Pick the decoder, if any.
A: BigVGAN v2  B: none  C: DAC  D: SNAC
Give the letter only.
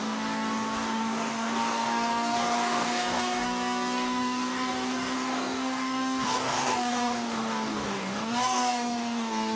C